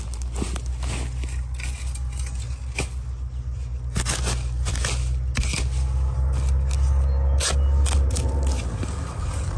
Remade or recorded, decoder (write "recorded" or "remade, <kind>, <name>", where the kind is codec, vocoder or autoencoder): recorded